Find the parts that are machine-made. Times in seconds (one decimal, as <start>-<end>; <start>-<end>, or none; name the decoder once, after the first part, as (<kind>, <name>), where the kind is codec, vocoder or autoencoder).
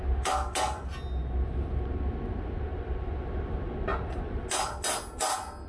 1.2-1.7 (vocoder, BigVGAN v2); 3.9-4.4